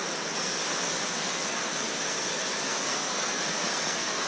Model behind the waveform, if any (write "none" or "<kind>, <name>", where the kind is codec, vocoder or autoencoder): codec, SNAC